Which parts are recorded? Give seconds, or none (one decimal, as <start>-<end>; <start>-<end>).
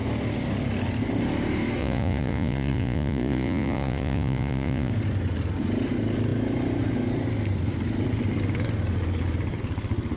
0.0-1.8; 4.9-10.2